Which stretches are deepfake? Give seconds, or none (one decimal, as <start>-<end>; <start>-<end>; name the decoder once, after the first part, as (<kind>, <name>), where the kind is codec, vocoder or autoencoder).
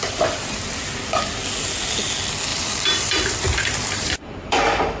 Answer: 0.0-0.6 (vocoder, BigVGAN v2); 2.5-5.0